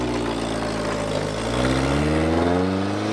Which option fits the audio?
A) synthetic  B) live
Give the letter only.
B